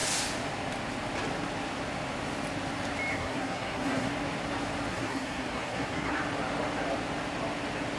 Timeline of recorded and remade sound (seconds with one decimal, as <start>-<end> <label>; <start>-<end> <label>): 0.0-3.1 recorded; 3.1-4.1 remade; 4.1-4.9 recorded; 4.9-6.2 remade; 6.2-8.0 recorded